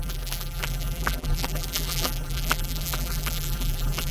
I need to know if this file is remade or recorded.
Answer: remade